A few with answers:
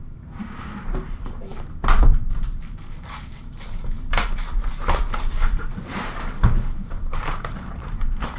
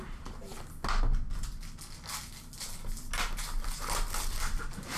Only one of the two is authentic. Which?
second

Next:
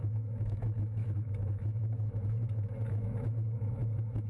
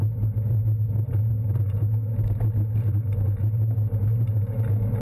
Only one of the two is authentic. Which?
second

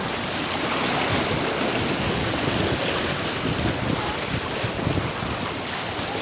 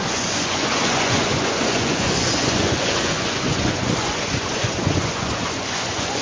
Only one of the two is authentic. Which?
first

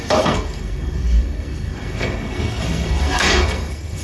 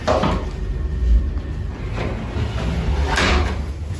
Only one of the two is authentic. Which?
second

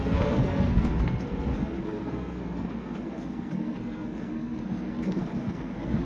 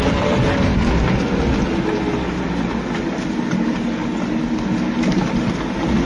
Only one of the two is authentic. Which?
second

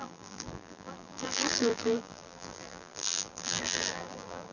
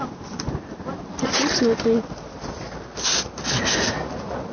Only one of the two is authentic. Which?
second